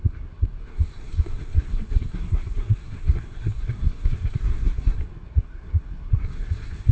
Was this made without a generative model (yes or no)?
no